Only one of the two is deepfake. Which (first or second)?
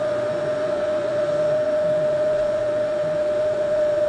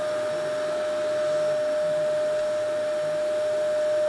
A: first